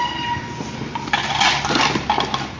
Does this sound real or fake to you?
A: real